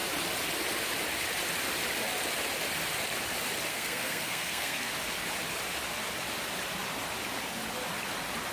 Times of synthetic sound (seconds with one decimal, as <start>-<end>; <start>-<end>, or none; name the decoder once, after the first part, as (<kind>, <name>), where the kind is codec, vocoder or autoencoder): 3.7-4.9 (codec, SNAC)